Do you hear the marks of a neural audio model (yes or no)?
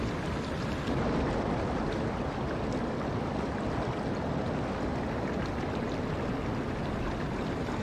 no